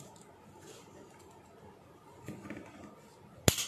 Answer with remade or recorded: recorded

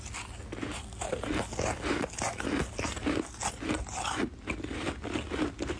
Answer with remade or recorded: recorded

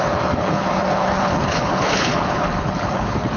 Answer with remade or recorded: remade